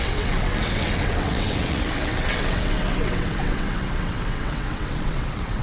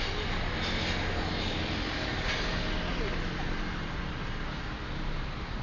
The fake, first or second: first